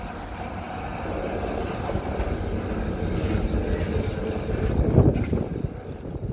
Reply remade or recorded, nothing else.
recorded